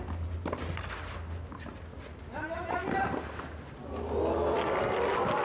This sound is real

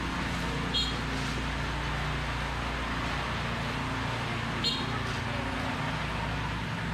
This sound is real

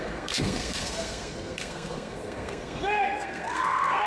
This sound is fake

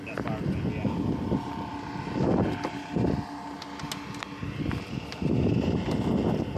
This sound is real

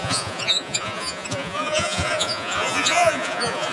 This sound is fake